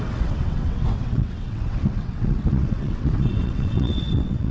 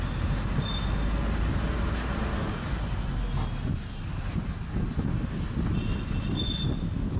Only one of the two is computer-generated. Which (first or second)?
first